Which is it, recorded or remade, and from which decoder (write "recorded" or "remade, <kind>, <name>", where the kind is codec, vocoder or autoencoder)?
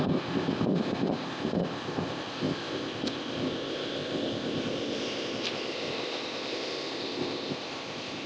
remade, codec, ZipCodec